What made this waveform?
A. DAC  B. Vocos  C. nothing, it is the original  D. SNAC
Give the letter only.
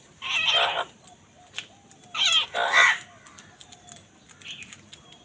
C